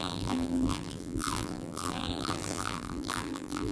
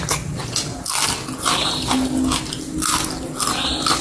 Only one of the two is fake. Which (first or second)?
first